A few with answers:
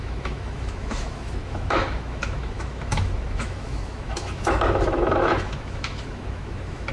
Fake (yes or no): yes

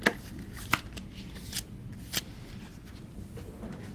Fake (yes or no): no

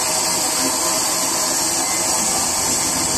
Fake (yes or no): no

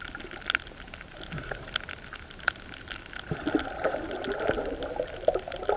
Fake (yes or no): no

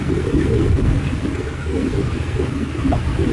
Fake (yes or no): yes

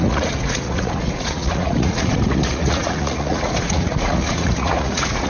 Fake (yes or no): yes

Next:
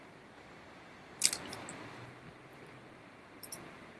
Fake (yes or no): no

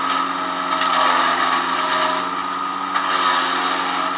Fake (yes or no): no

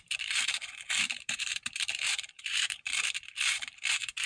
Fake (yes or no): yes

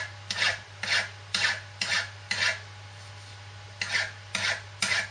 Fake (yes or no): no